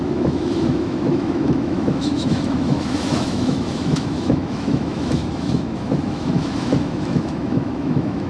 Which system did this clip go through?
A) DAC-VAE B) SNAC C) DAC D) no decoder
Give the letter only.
A